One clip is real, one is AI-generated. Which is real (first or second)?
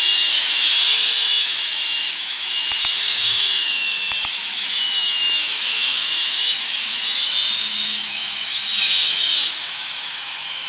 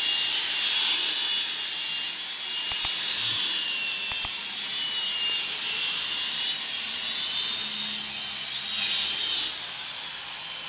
second